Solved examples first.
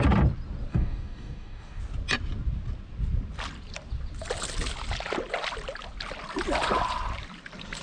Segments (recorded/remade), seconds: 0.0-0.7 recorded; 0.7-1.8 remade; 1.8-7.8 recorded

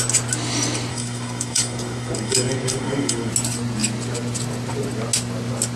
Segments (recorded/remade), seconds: 0.0-0.9 recorded; 0.9-3.3 remade; 3.3-5.8 recorded

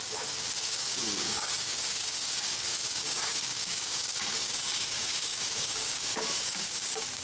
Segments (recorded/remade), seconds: 0.0-7.2 remade

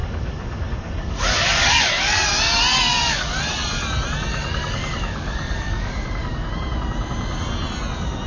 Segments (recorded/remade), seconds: 0.0-2.2 remade; 2.2-2.7 recorded; 2.7-3.3 remade; 3.3-4.3 recorded; 4.3-6.5 remade; 6.5-8.3 recorded